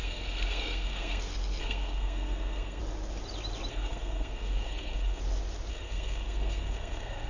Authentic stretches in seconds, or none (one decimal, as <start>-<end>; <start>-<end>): 1.2-1.6; 2.8-3.7; 5.2-5.7

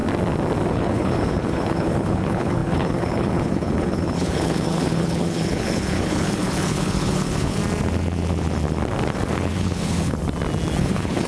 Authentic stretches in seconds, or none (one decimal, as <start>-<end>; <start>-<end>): 0.0-0.7; 7.6-9.5; 10.2-10.8